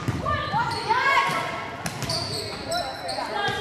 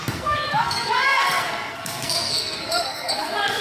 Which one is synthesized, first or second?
second